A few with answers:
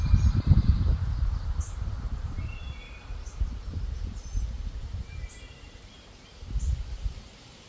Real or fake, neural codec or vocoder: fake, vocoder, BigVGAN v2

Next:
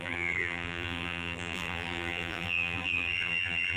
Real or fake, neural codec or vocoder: fake, vocoder, BigVGAN v2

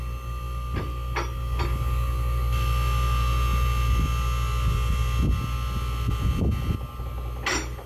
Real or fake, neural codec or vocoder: real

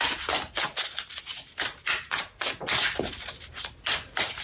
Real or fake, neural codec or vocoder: real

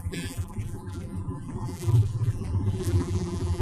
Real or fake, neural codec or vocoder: fake, vocoder, BigVGAN v2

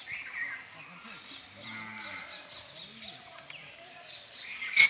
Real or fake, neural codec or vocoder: real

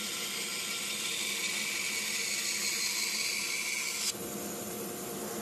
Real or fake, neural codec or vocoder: real